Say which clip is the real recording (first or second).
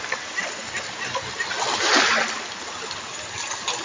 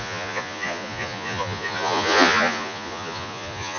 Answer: first